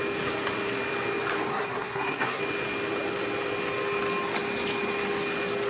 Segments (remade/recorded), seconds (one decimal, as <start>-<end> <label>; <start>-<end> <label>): 0.0-1.5 recorded; 1.5-2.4 remade; 2.4-5.7 recorded